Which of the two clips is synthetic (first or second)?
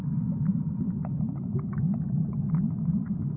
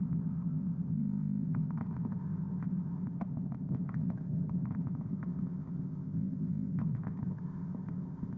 second